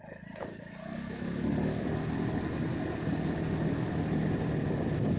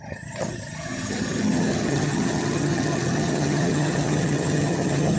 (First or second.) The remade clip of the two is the second